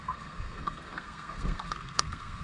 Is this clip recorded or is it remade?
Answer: remade